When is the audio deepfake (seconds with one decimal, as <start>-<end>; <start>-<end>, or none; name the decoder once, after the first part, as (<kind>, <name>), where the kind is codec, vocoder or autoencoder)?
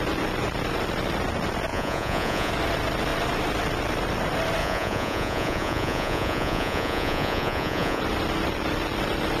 1.7-2.5 (vocoder, Vocos); 4.6-8.0